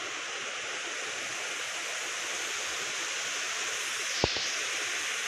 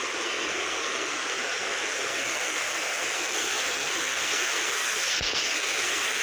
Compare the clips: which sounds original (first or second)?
first